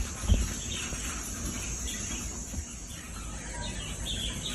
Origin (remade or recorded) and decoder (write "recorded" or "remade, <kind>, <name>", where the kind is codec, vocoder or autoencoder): recorded